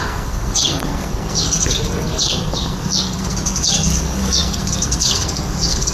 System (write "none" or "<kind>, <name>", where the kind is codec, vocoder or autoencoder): codec, SNAC